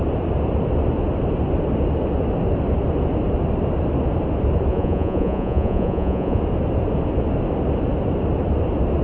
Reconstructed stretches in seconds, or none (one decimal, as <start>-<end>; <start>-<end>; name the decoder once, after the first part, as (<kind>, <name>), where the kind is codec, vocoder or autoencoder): 4.7-6.4 (vocoder, Vocos)